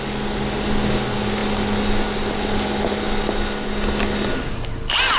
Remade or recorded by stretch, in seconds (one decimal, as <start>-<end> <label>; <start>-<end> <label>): 0.0-5.2 recorded